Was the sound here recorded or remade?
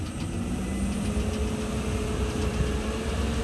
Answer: recorded